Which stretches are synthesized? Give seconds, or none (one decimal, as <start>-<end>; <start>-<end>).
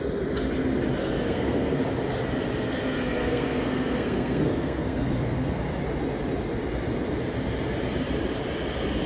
1.0-1.8; 3.2-5.6